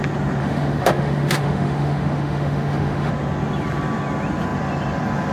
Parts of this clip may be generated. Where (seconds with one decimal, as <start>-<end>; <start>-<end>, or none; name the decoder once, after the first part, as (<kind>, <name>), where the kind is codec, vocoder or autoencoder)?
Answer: 0.4-3.1 (autoencoder, DAC-VAE)